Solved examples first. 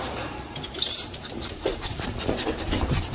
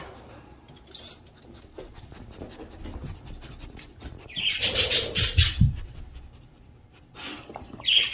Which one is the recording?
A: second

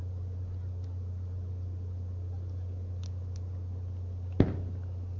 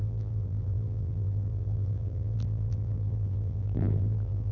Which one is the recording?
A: first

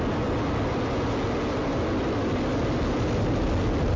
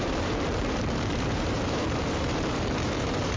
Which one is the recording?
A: first